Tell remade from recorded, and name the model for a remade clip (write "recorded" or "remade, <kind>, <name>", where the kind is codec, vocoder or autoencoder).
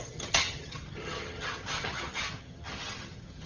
remade, vocoder, HiFi-GAN